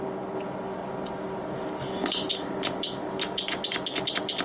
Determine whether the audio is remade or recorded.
recorded